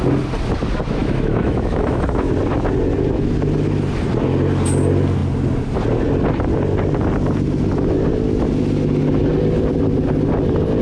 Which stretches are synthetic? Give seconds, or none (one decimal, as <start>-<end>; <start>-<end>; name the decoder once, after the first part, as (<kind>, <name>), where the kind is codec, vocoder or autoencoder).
1.0-2.3 (autoencoder, DAC-VAE)